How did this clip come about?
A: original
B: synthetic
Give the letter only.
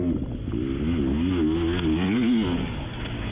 A